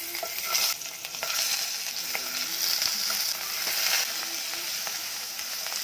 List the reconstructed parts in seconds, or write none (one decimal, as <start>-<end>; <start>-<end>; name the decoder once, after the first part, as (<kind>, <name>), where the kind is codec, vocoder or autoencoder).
4.8-5.3 (autoencoder, DAC-VAE)